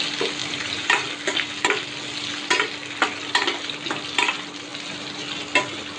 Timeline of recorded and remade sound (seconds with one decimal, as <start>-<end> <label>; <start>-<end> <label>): 0.0-0.4 recorded; 0.4-1.1 remade; 1.1-6.0 recorded